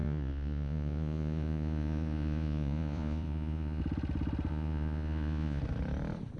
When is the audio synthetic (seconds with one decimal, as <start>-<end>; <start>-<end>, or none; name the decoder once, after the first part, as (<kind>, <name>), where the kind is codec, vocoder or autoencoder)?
0.0-3.8 (vocoder, Vocos); 4.5-5.6